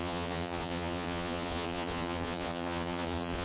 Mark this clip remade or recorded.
remade